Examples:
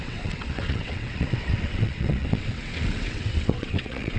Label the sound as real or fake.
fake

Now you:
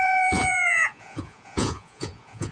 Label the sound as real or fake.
fake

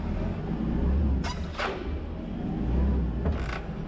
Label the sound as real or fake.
real